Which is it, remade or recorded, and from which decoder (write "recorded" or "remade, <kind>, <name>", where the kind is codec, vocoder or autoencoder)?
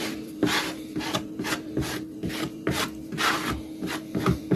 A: remade, vocoder, BigVGAN v2